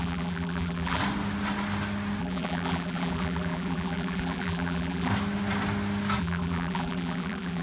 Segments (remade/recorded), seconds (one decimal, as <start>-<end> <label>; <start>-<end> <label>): 0.0-1.0 remade; 1.0-2.2 recorded; 2.2-5.1 remade; 5.1-6.2 recorded; 6.2-7.6 remade